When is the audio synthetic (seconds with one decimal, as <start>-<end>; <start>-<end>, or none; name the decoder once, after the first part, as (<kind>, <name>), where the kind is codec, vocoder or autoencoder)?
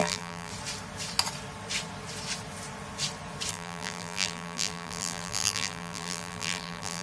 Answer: 0.0-0.5 (vocoder, BigVGAN v2); 3.5-7.0